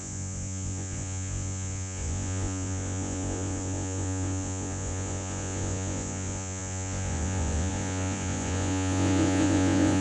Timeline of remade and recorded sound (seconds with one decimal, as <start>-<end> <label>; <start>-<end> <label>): 0.0-10.0 remade